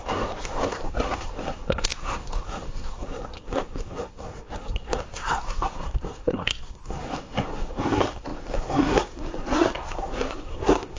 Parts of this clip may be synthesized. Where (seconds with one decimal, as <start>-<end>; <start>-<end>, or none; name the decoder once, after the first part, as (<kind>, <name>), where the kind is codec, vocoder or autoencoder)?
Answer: 0.0-11.0 (codec, SNAC)